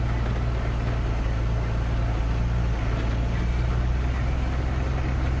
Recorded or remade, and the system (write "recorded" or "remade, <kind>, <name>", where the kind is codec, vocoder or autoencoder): recorded